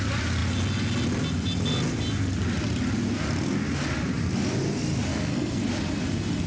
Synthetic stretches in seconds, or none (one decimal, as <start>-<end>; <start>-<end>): 5.1-5.6